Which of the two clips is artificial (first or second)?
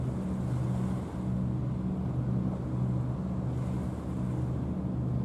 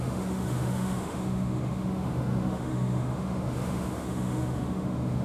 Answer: second